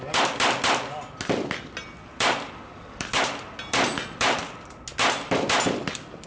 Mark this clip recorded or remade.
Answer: recorded